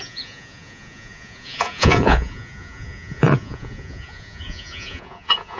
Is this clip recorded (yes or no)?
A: no